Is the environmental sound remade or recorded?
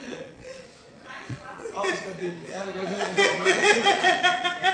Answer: remade